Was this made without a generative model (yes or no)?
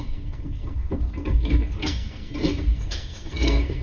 no